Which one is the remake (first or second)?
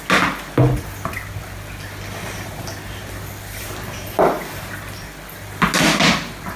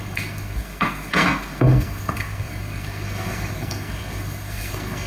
second